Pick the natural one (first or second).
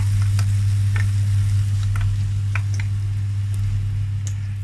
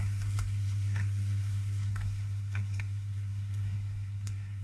first